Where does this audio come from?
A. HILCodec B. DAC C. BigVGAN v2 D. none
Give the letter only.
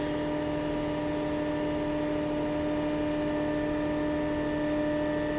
D